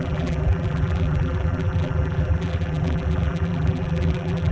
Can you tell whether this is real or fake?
fake